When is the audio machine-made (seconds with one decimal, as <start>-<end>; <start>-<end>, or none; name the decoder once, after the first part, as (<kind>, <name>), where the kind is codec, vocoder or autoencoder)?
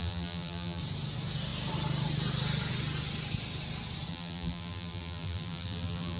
0.0-0.8 (vocoder, BigVGAN v2); 4.1-6.2